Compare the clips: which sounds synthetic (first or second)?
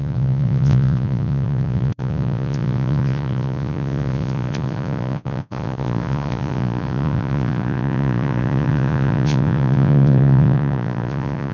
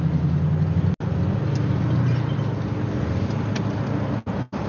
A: first